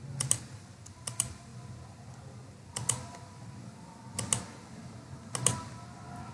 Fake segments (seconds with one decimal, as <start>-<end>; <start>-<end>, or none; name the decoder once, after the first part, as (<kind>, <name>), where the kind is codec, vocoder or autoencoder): none